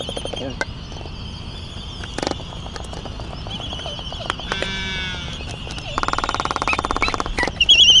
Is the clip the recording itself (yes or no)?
yes